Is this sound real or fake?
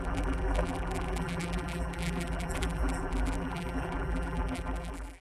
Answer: fake